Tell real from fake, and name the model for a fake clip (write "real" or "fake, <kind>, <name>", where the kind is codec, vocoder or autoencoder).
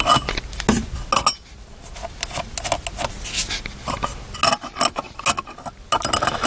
real